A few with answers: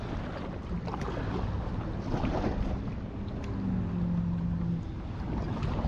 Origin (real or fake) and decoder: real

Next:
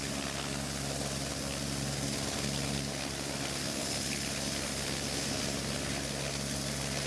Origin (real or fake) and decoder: real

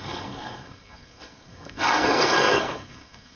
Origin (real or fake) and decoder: fake, codec, SNAC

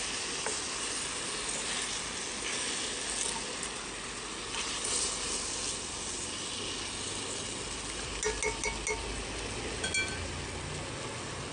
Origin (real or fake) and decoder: real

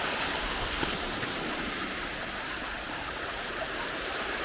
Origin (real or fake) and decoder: real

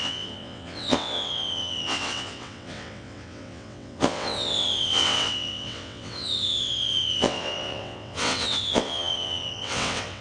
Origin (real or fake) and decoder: fake, vocoder, WaveNeXt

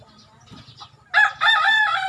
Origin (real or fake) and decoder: real